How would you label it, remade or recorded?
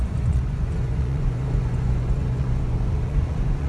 remade